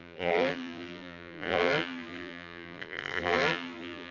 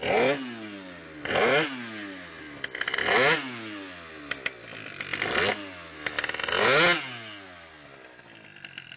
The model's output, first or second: first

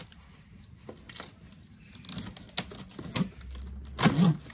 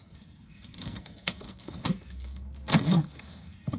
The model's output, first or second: second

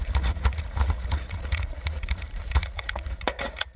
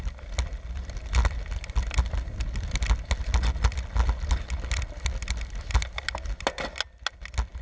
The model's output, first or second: first